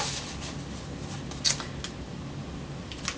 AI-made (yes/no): no